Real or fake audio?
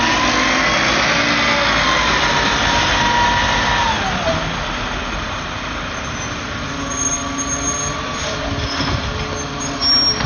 real